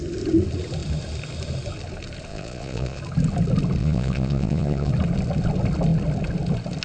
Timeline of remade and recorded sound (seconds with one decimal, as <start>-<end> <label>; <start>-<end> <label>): 0.0-2.3 recorded; 2.3-3.0 remade; 3.0-3.8 recorded; 3.8-4.9 remade; 4.9-6.8 recorded